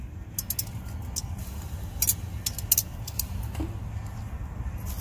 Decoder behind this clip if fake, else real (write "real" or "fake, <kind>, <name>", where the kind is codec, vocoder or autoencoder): real